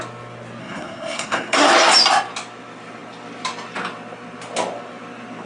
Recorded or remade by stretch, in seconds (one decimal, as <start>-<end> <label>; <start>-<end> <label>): 0.0-0.6 recorded; 0.6-1.7 remade; 1.7-5.5 recorded